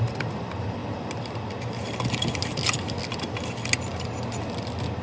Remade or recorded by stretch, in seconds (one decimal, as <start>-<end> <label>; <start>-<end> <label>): 0.0-5.0 recorded